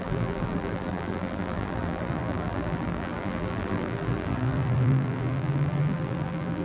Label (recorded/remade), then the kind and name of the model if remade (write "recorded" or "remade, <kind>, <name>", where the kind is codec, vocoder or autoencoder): remade, vocoder, BigVGAN v2